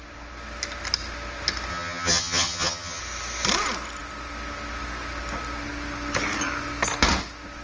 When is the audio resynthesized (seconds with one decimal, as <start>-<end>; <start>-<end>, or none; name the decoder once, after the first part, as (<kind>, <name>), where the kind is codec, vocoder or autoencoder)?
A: 1.7-3.0 (vocoder, HiFi-GAN)